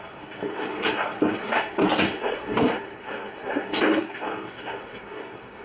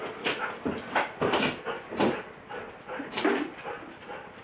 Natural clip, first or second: second